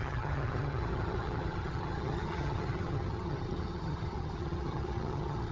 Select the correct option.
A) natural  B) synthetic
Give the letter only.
B